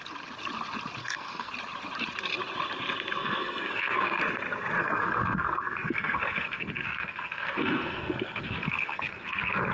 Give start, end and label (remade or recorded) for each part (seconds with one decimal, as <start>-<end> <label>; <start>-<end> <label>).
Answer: 0.0-1.0 recorded; 1.0-1.5 remade; 1.5-3.2 recorded; 3.2-4.2 remade; 4.2-4.8 recorded; 4.8-9.7 remade